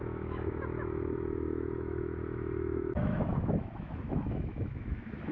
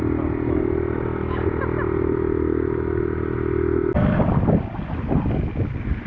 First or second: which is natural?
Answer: second